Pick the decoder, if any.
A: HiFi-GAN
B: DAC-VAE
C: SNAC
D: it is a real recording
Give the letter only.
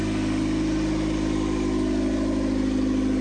D